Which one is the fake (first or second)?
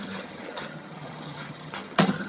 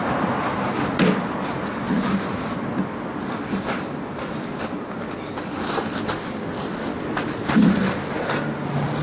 first